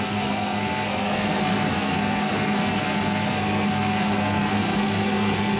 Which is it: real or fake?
fake